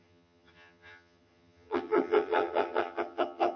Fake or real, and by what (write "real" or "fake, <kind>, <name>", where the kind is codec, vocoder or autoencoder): fake, vocoder, HiFi-GAN